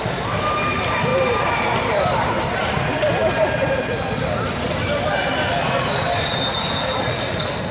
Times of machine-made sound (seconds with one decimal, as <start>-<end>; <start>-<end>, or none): 1.1-2.6